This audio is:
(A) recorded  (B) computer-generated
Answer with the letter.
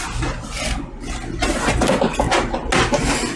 A